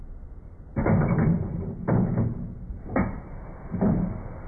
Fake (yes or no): no